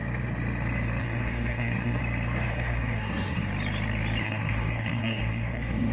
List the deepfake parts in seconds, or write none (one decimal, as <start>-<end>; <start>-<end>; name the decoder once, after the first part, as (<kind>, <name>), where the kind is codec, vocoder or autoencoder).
1.0-2.0 (codec, SNAC); 2.5-3.5; 4.2-5.9